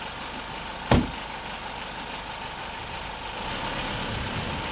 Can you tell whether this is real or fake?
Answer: real